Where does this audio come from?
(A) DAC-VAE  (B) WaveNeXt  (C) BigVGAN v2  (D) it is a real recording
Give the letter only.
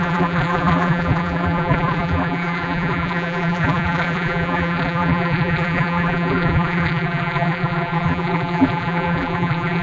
C